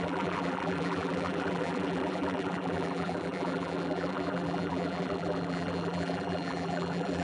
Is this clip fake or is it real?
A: fake